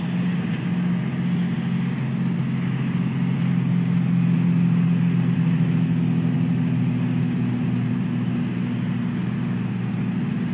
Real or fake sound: real